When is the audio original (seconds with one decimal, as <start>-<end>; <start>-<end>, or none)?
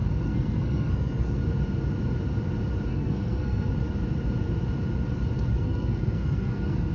1.4-2.9; 3.7-5.5